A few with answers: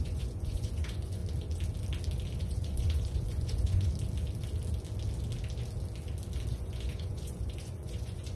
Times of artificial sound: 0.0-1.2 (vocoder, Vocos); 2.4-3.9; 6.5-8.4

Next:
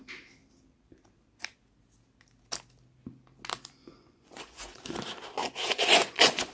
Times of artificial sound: 3.8-4.8 (vocoder, Vocos); 5.4-6.5

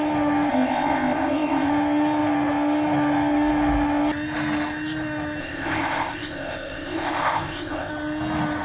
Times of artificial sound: 0.5-1.7 (codec, ZipCodec); 5.4-7.9

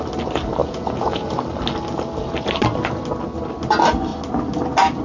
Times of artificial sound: 0.6-1.3 (vocoder, Vocos)

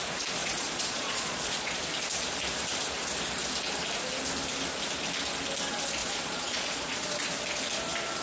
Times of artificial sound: 0.4-1.8 (vocoder, Vocos); 6.0-7.1